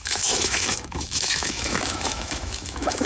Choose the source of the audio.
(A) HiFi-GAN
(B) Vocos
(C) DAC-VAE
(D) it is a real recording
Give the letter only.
C